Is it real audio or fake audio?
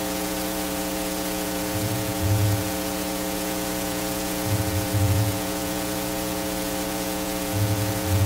fake